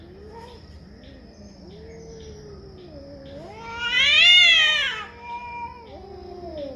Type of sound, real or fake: real